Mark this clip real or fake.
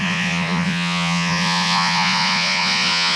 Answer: fake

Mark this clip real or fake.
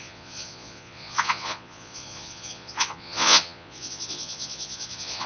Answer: fake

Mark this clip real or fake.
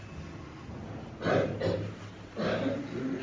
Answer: real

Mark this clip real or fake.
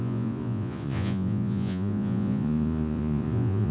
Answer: fake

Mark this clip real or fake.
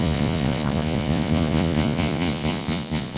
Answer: fake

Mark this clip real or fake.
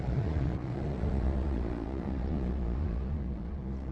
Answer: fake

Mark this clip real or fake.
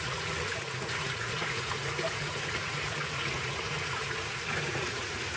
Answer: fake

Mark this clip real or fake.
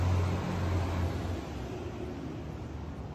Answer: real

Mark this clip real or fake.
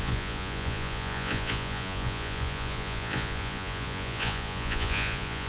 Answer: fake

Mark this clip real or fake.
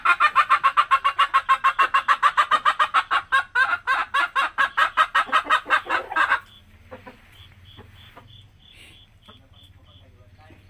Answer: real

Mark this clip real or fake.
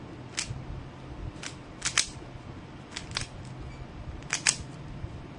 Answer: real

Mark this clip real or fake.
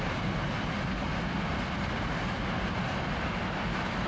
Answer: real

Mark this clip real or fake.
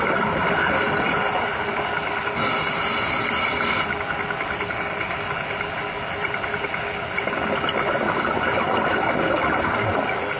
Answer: real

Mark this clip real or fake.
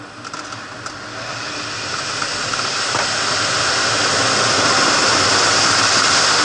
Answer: real